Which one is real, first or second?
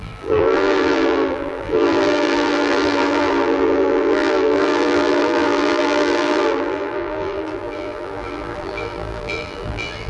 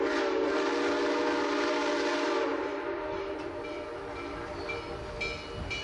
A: second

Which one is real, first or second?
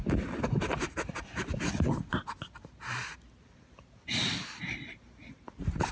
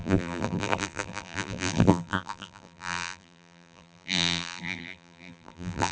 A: first